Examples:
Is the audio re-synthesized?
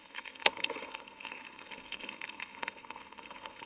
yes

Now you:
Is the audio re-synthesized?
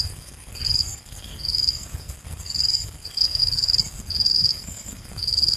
yes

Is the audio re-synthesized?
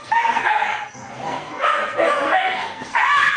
yes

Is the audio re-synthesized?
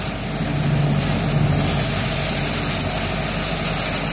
no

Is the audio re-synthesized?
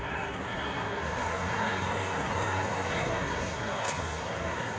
yes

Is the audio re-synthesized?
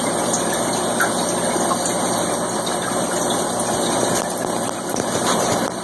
no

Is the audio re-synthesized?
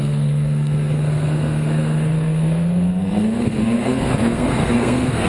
yes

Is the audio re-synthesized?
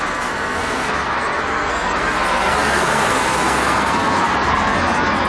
yes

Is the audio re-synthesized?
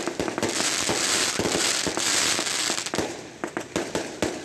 no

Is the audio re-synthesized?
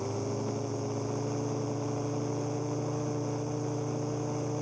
no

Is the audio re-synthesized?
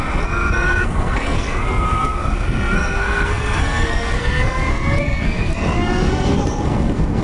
yes